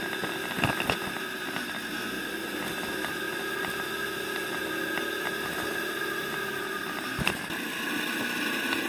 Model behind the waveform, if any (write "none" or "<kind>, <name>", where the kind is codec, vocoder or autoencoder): none